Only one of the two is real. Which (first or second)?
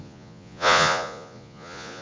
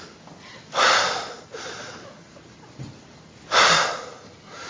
second